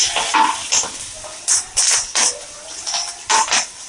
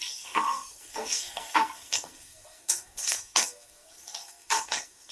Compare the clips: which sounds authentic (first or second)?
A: first